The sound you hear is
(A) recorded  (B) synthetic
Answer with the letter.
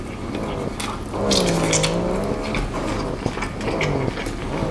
A